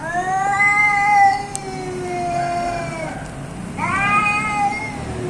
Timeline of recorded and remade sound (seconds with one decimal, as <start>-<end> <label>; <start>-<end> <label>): 0.0-5.3 recorded